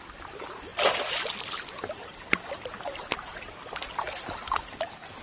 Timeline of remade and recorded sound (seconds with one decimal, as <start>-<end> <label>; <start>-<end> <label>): 0.0-0.7 remade; 0.7-1.4 recorded; 1.4-3.8 remade; 3.8-4.7 recorded; 4.7-5.2 remade

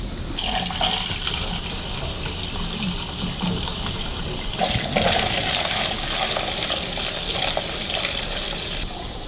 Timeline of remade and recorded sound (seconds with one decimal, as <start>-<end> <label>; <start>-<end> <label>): 0.0-9.3 recorded

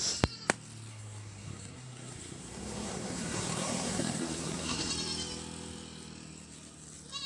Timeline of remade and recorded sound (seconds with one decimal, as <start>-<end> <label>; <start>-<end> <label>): 0.0-0.9 recorded; 0.9-4.9 remade; 4.9-7.3 recorded

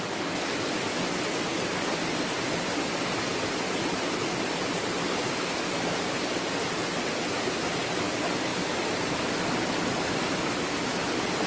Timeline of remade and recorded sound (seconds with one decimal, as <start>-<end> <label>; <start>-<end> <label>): 0.0-11.5 recorded

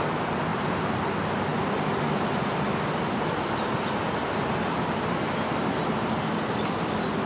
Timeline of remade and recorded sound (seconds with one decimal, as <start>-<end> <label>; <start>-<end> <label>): 0.0-0.5 recorded; 0.5-1.0 remade; 1.0-7.3 recorded

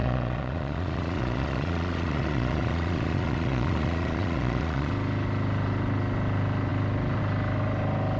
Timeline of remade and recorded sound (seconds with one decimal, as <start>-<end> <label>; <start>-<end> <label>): 0.0-4.9 remade; 4.9-8.2 recorded

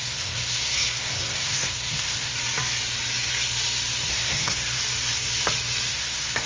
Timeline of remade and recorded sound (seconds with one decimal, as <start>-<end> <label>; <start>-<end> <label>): 0.0-2.3 remade; 2.3-4.1 recorded; 4.1-4.8 remade; 4.8-5.9 recorded; 5.9-6.5 remade

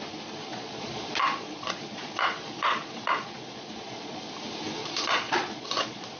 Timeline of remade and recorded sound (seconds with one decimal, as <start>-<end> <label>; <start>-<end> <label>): 0.0-0.5 recorded; 0.5-4.2 remade; 4.2-4.8 recorded; 4.8-6.2 remade